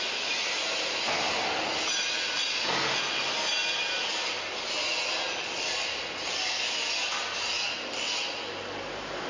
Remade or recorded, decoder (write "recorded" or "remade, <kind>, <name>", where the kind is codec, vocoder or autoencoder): recorded